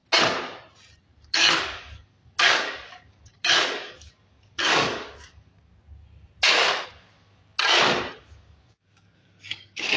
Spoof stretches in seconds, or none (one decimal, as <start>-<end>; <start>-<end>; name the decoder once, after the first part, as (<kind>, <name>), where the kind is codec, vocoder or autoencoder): 1.2-5.7 (codec, DAC); 6.5-7.4; 8.2-10.0